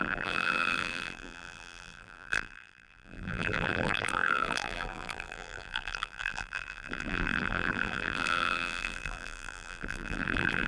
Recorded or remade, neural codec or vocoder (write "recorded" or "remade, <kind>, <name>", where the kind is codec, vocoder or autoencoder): remade, vocoder, BigVGAN v2